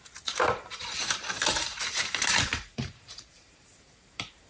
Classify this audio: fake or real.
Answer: fake